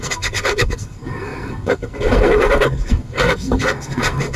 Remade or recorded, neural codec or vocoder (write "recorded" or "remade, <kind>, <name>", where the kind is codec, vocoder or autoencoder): remade, codec, SNAC